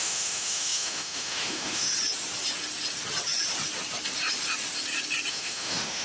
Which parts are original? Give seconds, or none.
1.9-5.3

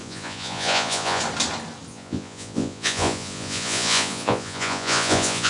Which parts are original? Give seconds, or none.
1.2-1.9

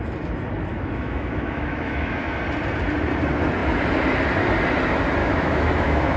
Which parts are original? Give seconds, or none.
0.0-0.7; 2.4-5.2

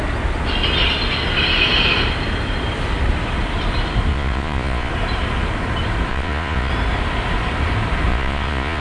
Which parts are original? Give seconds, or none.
0.0-4.1; 4.9-6.1; 6.7-8.1

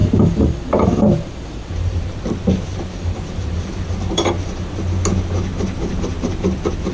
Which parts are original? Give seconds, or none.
2.2-2.7; 4.7-6.9

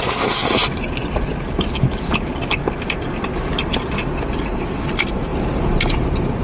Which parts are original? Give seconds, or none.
0.0-0.4; 4.2-6.4